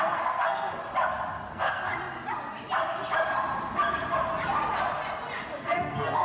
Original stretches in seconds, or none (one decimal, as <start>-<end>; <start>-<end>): 0.8-1.5; 1.9-5.6